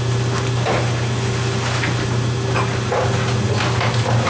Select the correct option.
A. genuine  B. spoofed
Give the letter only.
A